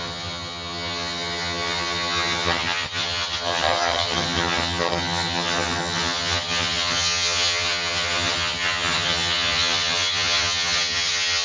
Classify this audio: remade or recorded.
remade